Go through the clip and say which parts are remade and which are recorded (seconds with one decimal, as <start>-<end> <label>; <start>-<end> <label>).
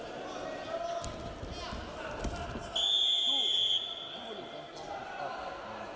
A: 0.0-6.0 recorded